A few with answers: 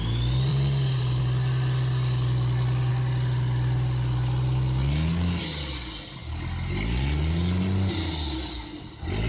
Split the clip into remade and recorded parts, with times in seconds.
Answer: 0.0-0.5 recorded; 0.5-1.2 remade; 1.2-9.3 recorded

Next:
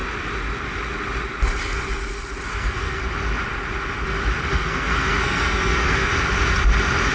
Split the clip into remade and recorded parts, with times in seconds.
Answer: 0.0-2.5 recorded; 2.5-3.0 remade; 3.0-4.5 recorded; 4.5-6.1 remade; 6.1-7.1 recorded

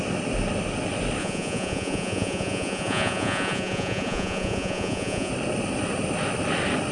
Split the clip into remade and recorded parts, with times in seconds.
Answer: 0.0-1.2 recorded; 1.2-5.3 remade; 5.3-6.9 recorded

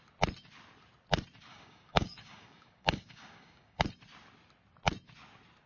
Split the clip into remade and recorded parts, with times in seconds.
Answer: 0.0-1.5 recorded; 1.5-3.8 remade; 3.8-5.7 recorded

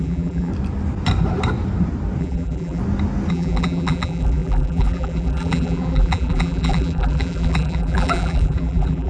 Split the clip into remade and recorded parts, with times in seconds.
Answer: 0.0-0.5 remade; 0.5-2.2 recorded; 2.2-2.8 remade; 2.8-3.3 recorded; 3.3-9.1 remade